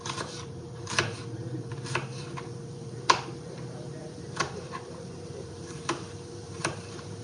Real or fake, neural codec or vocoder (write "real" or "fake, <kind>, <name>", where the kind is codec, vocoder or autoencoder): fake, vocoder, BigVGAN v2